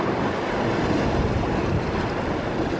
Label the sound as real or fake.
real